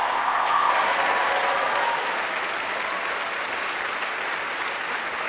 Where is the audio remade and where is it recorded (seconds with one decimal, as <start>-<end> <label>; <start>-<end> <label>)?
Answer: 0.0-0.7 remade; 0.7-5.3 recorded